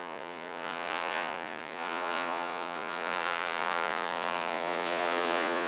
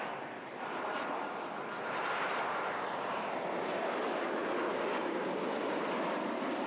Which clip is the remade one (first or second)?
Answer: first